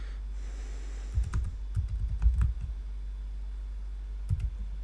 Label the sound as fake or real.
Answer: real